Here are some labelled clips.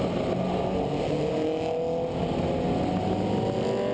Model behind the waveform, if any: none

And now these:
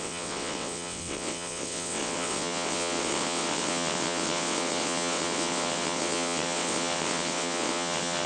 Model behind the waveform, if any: vocoder, WaveNeXt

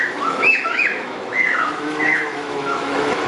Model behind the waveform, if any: autoencoder, DAC-VAE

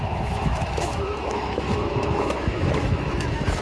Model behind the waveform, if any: autoencoder, DAC-VAE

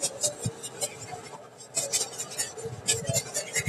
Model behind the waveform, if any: none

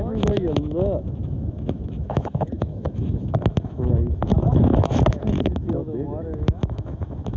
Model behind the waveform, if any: autoencoder, DAC-VAE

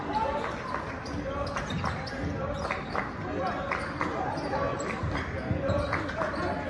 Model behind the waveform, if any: none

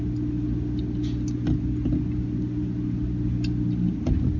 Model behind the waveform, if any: none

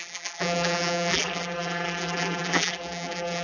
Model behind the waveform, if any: vocoder, BigVGAN v2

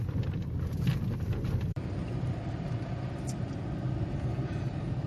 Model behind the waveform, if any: vocoder, BigVGAN v2